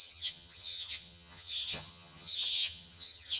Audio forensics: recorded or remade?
remade